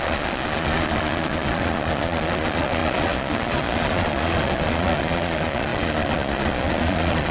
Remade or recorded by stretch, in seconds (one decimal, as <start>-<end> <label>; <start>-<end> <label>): 0.0-7.3 remade